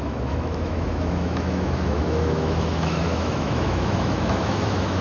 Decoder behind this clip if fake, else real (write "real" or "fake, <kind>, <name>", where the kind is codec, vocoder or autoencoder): fake, autoencoder, DAC-VAE